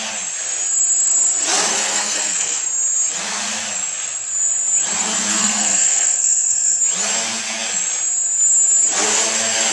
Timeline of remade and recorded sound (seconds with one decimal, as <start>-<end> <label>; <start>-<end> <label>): 0.0-1.7 recorded; 1.7-2.6 remade; 2.6-5.3 recorded; 5.3-6.8 remade; 6.8-9.7 recorded